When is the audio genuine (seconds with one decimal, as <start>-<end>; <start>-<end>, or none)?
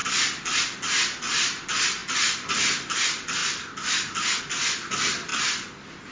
0.0-6.1